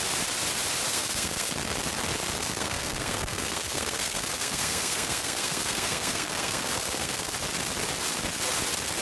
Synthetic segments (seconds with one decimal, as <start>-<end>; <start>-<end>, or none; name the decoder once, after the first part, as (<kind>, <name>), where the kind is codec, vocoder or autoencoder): 0.9-1.5 (codec, SNAC); 2.4-7.3